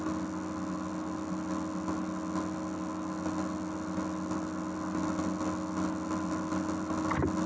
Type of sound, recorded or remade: recorded